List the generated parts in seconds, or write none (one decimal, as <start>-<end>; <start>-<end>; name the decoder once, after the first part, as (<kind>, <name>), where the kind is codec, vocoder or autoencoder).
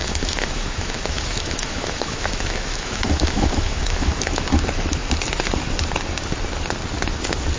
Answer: 0.0-4.6 (autoencoder, DAC-VAE)